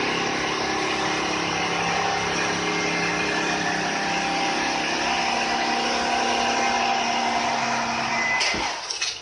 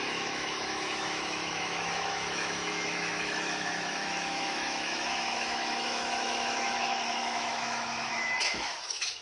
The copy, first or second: second